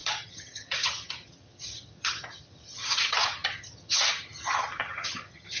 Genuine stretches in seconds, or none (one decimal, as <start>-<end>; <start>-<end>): none